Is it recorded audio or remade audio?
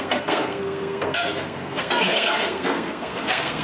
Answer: remade